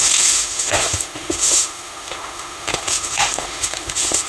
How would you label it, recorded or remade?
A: remade